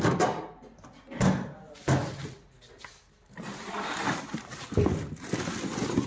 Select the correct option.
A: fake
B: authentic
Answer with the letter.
B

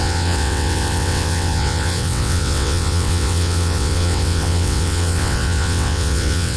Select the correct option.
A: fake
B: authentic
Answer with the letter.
A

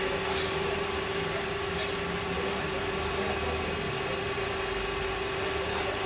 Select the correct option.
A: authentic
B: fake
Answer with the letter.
A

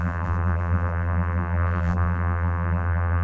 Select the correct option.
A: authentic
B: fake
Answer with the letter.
B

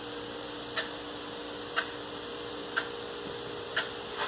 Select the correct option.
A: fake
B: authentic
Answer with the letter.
B